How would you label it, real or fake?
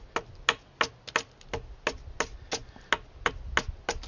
real